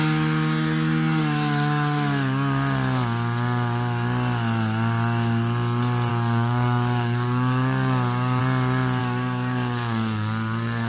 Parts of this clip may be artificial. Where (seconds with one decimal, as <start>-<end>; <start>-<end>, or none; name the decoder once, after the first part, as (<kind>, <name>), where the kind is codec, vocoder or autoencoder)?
6.1-8.4 (codec, DAC); 9.0-10.9